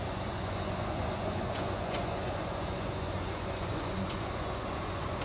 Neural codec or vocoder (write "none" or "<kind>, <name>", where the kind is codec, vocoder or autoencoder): vocoder, Vocos